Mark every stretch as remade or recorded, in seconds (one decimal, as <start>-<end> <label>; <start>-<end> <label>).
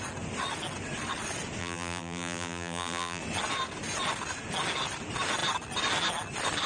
0.0-1.6 recorded; 1.6-3.2 remade; 3.2-6.7 recorded